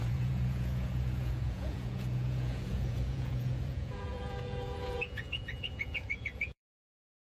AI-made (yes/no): yes